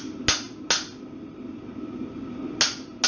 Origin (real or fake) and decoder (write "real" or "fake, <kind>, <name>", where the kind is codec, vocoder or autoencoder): real